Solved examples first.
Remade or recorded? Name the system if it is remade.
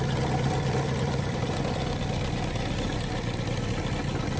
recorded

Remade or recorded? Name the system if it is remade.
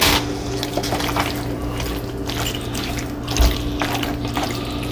recorded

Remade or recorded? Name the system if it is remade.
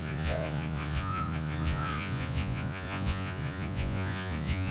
remade, vocoder, Vocos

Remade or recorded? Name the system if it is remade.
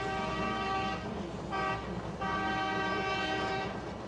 recorded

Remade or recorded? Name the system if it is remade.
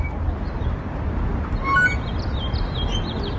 recorded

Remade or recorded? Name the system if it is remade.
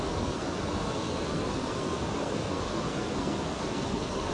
remade, codec, SNAC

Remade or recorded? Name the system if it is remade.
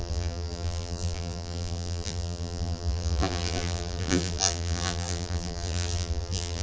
remade, vocoder, BigVGAN v2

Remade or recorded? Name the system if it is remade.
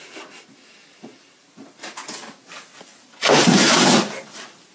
recorded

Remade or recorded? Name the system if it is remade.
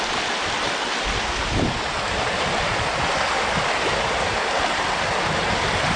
recorded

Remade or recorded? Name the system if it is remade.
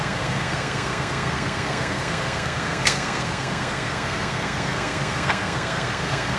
remade, codec, SNAC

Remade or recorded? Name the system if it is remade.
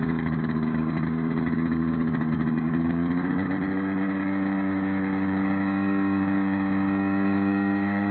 remade, codec, DAC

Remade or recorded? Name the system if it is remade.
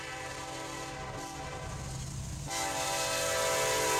recorded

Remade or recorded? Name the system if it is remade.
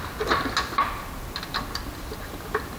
recorded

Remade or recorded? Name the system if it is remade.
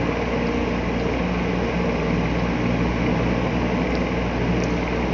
recorded